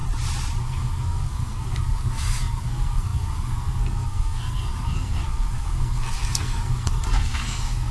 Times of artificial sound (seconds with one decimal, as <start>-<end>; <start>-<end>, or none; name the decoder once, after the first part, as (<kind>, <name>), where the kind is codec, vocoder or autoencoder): 0.6-7.9 (codec, SNAC)